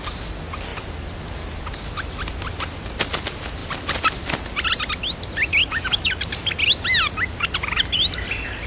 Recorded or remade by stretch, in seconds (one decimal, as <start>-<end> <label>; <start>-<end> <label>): 0.0-5.6 recorded; 5.6-6.1 remade; 6.1-8.7 recorded